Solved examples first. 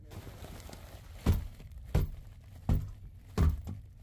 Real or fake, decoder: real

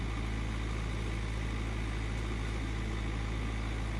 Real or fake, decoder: real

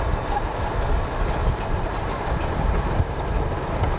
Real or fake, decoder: real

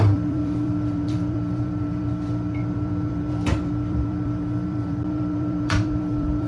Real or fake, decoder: fake, vocoder, BigVGAN v2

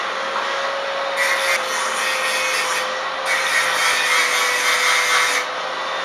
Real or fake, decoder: real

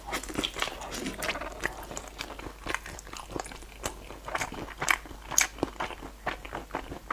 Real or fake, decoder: real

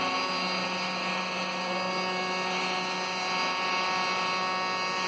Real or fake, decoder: real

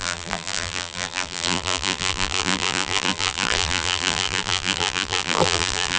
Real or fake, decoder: fake, vocoder, BigVGAN v2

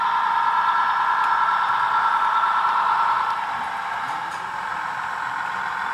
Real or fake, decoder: real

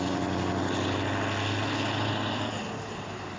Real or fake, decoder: real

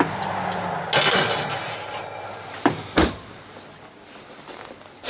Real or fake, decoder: real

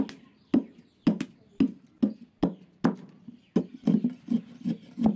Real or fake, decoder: real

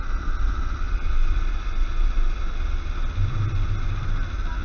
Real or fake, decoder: real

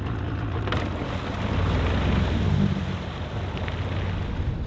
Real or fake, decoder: real